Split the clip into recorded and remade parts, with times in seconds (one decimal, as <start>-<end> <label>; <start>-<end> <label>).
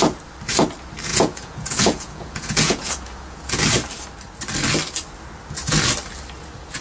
0.0-1.1 recorded; 1.1-3.5 remade; 3.5-6.8 recorded